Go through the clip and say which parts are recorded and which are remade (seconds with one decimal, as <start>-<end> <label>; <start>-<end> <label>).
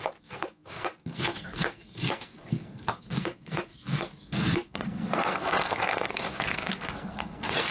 0.0-7.7 remade